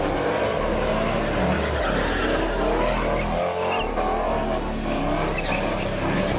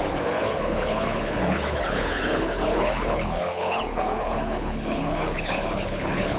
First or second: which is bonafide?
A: first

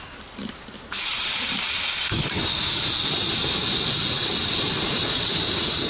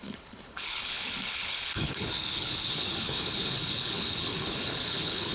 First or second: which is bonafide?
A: first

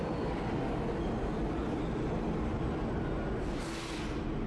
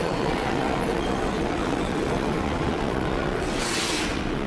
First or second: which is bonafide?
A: first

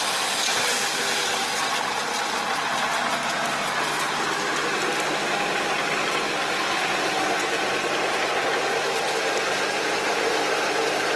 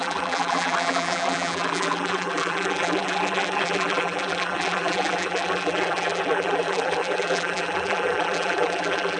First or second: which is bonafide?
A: first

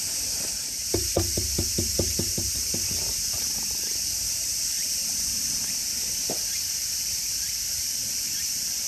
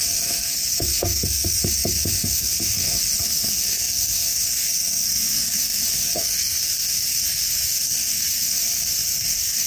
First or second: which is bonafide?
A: first